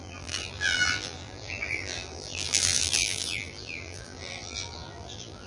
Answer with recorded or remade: remade